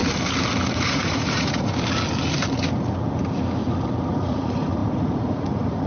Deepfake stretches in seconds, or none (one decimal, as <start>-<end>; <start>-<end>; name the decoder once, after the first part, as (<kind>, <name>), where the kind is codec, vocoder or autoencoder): 0.7-1.7 (vocoder, Vocos); 4.1-5.9